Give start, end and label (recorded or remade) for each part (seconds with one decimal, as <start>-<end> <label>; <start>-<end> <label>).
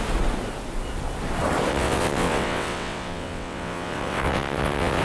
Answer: 0.0-1.7 recorded; 1.7-5.0 remade